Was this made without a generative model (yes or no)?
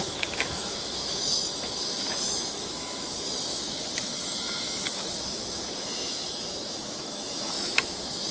no